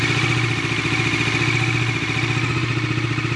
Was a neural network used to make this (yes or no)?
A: no